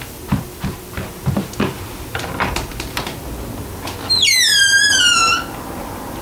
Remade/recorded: recorded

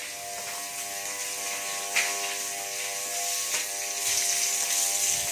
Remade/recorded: recorded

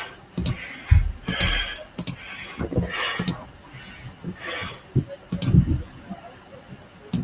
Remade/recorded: recorded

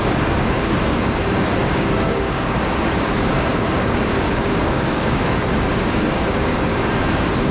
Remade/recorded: remade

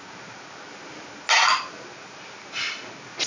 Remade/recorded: recorded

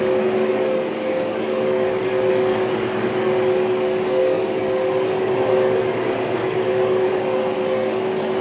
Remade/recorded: remade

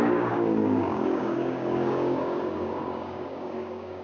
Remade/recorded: remade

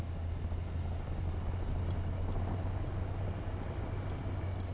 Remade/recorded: recorded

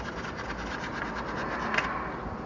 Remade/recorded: recorded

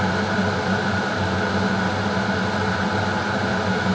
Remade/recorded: recorded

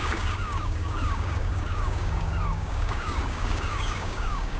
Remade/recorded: remade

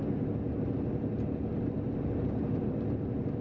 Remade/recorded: recorded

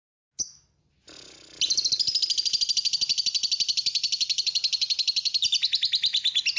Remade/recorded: recorded